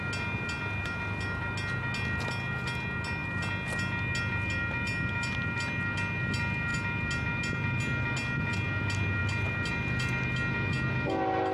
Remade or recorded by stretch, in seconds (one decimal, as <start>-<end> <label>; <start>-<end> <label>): 0.0-11.5 recorded